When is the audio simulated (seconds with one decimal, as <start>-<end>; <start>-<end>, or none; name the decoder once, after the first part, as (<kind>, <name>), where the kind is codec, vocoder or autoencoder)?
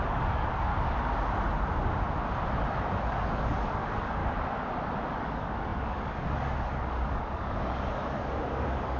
0.0-0.7 (codec, DAC); 3.0-4.2; 5.1-9.0